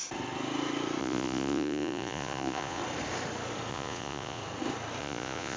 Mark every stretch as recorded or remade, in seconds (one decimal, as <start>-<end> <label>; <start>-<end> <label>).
0.0-1.0 recorded; 1.0-2.8 remade; 2.8-3.7 recorded; 3.7-4.4 remade; 4.4-5.0 recorded; 5.0-5.6 remade